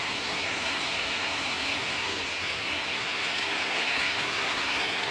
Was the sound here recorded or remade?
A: remade